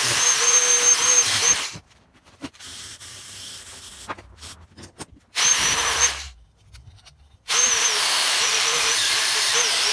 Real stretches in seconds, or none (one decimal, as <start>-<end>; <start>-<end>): 3.5-5.5